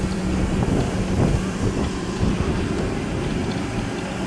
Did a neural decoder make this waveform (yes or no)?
yes